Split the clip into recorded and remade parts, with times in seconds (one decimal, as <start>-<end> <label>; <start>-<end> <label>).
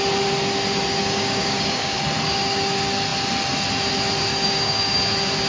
0.0-1.0 recorded; 1.0-2.0 remade; 2.0-4.3 recorded; 4.3-5.0 remade; 5.0-5.5 recorded